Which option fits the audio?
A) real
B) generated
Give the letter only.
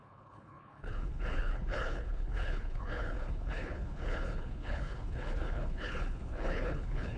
B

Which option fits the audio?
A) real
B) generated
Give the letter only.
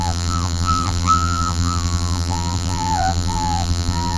B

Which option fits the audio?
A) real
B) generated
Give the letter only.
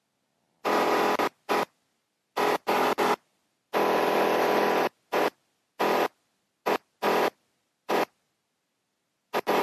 A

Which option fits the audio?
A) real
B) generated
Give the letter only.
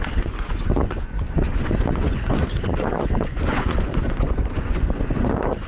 B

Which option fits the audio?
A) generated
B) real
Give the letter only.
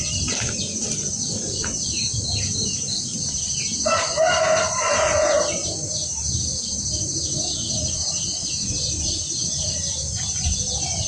B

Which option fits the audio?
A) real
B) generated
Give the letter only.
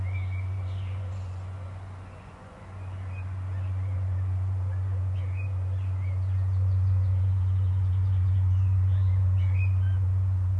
B